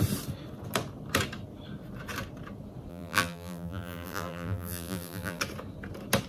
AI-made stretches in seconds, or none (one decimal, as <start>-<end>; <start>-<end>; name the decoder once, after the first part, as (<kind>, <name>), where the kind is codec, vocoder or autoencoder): 2.9-5.4 (vocoder, BigVGAN v2)